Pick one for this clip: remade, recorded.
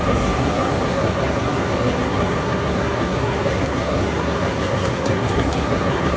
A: remade